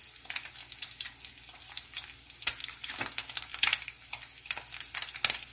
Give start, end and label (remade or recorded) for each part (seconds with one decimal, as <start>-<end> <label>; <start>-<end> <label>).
0.0-5.5 recorded